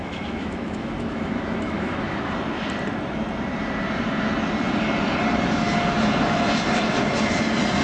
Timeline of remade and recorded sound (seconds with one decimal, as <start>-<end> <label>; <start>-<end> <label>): 0.0-2.3 remade; 2.3-7.8 recorded